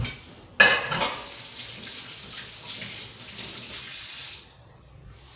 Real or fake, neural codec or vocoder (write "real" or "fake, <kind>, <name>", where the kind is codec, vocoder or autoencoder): real